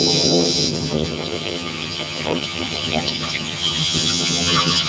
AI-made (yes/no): yes